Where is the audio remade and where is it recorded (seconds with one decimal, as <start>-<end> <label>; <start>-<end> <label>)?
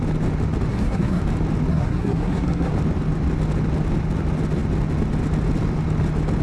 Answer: 0.0-0.7 recorded; 0.7-1.2 remade; 1.2-1.7 recorded; 1.7-2.7 remade; 2.7-6.4 recorded